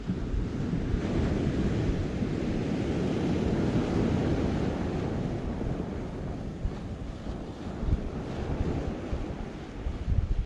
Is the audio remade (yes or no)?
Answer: no